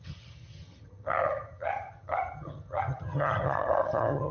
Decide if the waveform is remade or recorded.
remade